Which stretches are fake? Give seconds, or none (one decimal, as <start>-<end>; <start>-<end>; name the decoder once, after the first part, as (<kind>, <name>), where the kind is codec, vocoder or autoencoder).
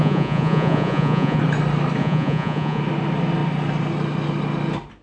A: 0.0-1.4 (vocoder, Vocos); 2.0-2.8